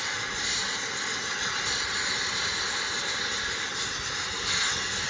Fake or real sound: real